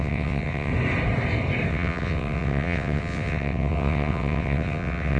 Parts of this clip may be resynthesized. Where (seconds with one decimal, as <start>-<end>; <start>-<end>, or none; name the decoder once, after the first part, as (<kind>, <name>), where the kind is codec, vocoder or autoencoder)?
0.0-0.7 (vocoder, WaveNeXt); 1.7-5.2